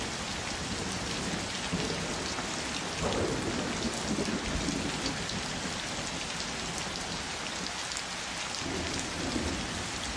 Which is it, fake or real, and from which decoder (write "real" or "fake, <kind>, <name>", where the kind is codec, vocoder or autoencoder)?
real